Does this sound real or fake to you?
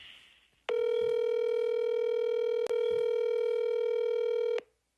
real